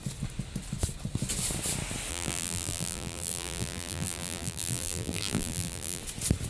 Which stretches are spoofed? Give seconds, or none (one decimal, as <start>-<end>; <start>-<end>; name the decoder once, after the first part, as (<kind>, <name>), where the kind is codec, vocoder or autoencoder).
2.1-6.0 (vocoder, BigVGAN v2)